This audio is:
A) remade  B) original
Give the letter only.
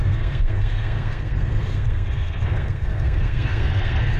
A